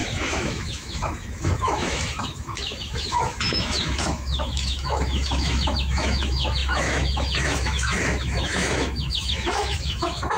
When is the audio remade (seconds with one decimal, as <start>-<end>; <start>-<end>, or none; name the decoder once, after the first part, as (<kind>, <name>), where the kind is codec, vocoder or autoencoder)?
0.0-10.4 (autoencoder, DAC-VAE)